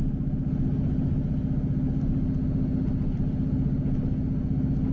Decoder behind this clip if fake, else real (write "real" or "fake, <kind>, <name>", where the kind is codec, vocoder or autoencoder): real